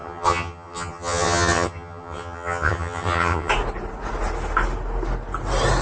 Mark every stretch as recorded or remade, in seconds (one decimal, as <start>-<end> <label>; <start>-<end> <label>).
0.0-3.5 remade; 3.5-5.8 recorded